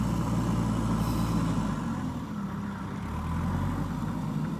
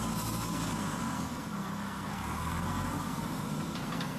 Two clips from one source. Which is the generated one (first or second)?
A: second